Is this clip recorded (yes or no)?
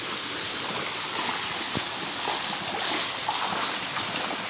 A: yes